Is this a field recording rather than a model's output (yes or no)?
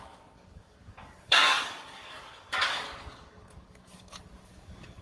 no